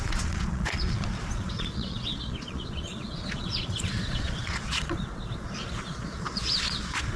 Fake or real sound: fake